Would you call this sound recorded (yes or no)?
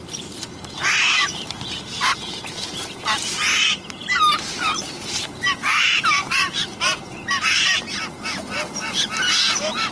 no